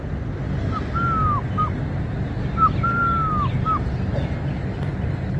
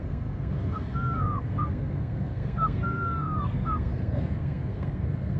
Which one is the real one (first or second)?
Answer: first